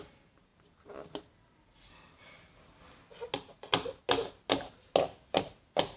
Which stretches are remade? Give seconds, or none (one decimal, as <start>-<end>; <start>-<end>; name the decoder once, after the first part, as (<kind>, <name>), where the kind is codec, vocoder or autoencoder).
none